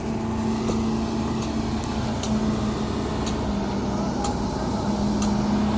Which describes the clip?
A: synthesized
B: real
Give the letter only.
B